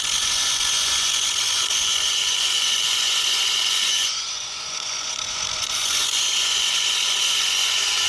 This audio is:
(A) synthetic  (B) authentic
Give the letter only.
A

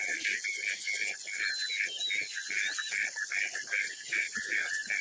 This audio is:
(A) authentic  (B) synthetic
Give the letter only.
A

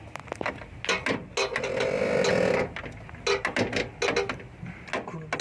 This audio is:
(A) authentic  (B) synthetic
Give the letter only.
A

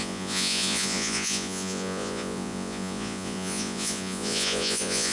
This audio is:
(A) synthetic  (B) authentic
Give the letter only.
A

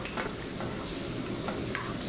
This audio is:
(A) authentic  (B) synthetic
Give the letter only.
A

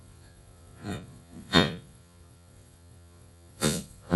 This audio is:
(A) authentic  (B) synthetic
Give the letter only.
B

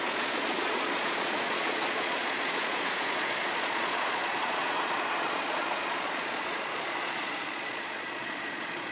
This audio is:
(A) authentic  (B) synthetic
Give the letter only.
B